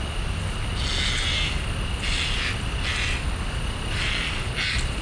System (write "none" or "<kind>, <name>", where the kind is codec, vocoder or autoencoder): none